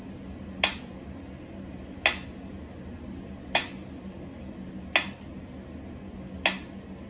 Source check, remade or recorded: recorded